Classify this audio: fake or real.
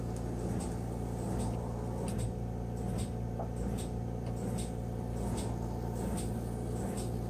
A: real